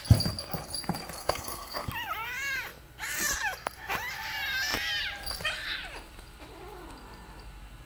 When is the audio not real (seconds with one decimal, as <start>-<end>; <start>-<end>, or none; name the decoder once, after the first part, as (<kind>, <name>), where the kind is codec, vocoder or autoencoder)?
1.2-1.9 (codec, SNAC)